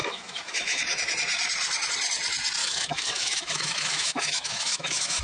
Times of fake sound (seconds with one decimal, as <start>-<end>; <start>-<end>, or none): 0.0-0.8; 2.6-5.2